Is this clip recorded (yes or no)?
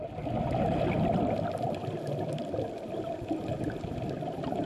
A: yes